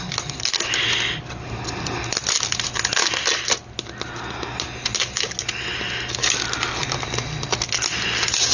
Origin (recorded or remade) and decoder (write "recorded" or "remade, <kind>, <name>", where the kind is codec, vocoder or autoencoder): recorded